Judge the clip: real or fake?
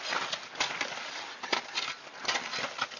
real